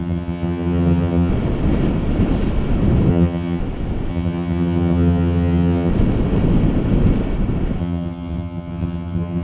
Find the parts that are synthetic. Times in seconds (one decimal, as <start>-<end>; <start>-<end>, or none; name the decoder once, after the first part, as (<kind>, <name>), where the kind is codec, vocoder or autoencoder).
0.0-1.3 (vocoder, HiFi-GAN); 3.1-3.6; 4.1-5.9; 7.8-9.4